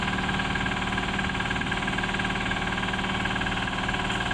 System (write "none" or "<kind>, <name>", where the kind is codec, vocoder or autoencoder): none